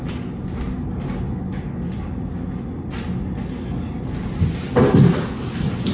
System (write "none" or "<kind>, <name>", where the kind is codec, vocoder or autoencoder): none